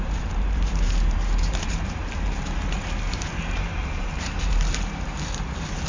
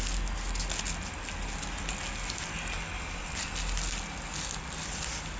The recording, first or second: second